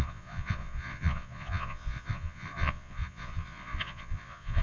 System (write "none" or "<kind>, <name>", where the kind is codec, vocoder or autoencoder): vocoder, Vocos